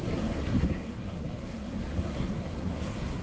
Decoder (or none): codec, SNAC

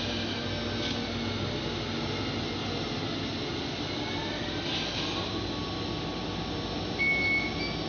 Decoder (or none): none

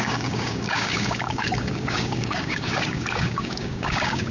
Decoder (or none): codec, DAC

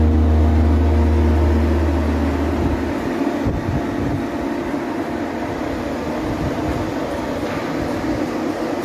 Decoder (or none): none